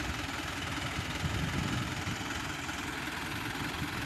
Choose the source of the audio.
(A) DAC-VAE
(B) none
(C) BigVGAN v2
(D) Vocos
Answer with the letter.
B